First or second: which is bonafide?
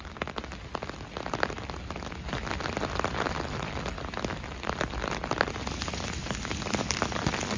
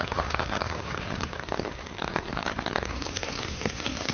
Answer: first